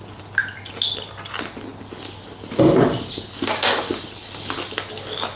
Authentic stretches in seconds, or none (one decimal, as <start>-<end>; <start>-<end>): 0.0-5.4